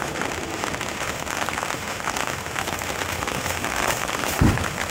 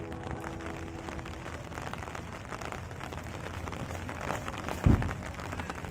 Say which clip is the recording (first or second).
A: second